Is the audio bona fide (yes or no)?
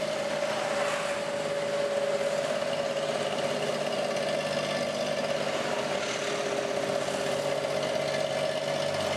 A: yes